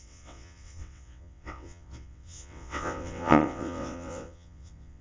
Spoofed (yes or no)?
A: yes